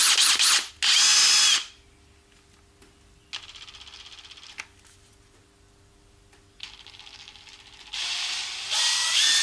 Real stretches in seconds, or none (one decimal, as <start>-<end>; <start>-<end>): 0.0-9.4